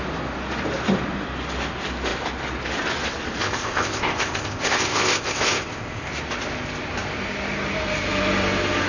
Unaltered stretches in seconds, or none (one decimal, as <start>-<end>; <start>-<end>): 0.0-3.4; 6.1-8.9